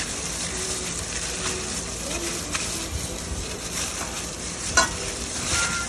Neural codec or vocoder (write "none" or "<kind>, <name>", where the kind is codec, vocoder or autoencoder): vocoder, BigVGAN v2